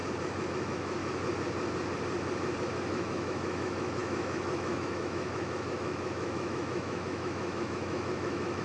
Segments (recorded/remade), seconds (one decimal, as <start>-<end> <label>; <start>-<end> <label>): 0.0-0.5 recorded; 0.5-1.0 remade; 1.0-2.6 recorded; 2.6-8.6 remade